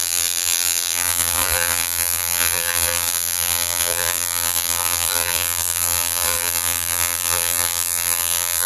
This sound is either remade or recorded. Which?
remade